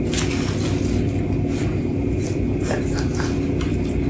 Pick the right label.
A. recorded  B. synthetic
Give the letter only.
A